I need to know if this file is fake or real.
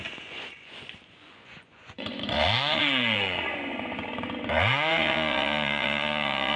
fake